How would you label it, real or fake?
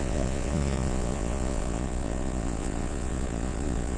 fake